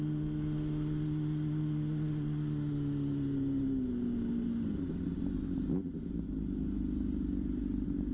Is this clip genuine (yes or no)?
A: yes